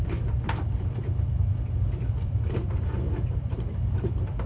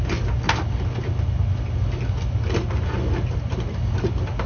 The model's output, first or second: first